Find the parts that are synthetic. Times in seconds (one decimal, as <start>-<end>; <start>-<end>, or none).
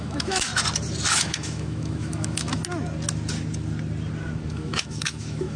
0.0-0.5; 1.1-2.6; 4.5-5.6